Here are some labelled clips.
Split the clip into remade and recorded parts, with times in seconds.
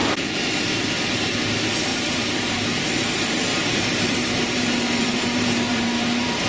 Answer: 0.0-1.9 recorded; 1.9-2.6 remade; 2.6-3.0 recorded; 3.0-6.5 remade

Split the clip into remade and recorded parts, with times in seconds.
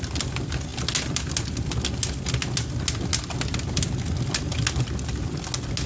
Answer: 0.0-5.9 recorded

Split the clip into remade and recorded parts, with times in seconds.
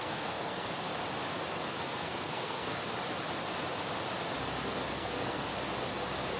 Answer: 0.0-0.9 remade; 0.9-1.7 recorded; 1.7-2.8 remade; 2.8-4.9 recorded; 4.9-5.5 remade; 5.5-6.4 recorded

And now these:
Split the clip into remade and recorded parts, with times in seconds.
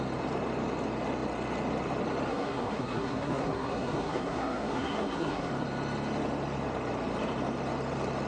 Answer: 0.0-2.3 recorded; 2.3-5.5 remade; 5.5-8.3 recorded